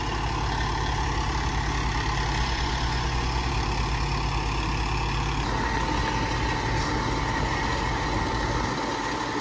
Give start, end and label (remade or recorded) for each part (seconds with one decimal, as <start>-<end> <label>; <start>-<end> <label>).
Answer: 0.0-2.4 recorded; 2.4-3.5 remade; 3.5-9.4 recorded